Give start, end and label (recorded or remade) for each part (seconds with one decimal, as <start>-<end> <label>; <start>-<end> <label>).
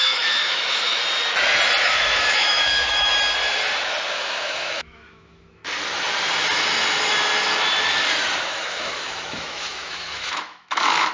0.0-1.0 remade; 1.0-1.8 recorded; 1.8-3.1 remade; 3.1-4.1 recorded; 4.1-5.6 remade; 5.6-8.4 recorded; 8.4-11.1 remade